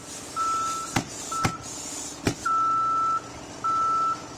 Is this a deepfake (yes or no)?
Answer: no